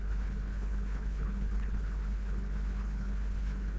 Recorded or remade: remade